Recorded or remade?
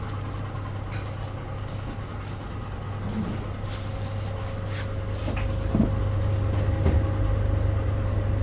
recorded